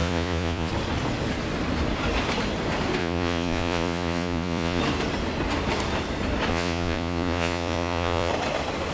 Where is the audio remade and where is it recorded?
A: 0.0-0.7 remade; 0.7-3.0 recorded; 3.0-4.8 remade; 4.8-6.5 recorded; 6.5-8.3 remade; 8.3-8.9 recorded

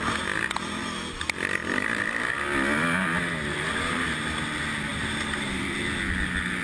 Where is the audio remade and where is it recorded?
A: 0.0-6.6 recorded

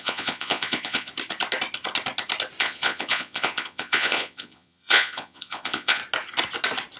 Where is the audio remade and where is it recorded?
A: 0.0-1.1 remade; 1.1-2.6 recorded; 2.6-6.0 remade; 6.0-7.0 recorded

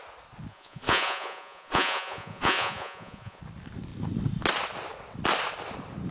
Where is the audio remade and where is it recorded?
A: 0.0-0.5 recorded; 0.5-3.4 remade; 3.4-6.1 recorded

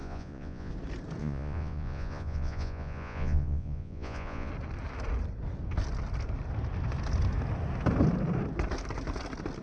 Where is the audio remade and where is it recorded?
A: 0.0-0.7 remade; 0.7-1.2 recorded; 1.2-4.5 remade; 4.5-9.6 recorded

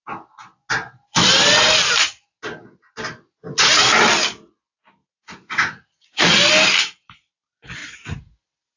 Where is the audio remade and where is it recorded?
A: 0.0-5.0 recorded; 5.0-6.4 remade; 6.4-7.8 recorded; 7.8-8.3 remade; 8.3-8.8 recorded

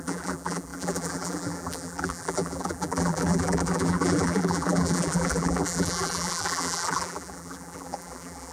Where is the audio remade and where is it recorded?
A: 0.0-8.5 remade

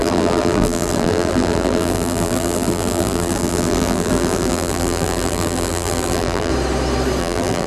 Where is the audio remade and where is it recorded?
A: 0.0-6.5 remade; 6.5-7.2 recorded; 7.2-7.7 remade